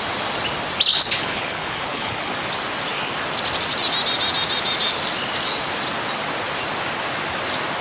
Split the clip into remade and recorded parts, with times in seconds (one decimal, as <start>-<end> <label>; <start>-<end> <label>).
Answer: 0.0-0.9 recorded; 0.9-2.3 remade; 2.3-7.8 recorded